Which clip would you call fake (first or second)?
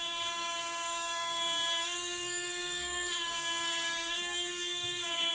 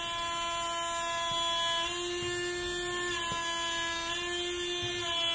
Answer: first